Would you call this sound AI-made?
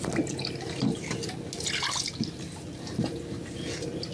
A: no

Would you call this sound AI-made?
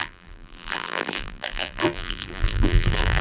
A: yes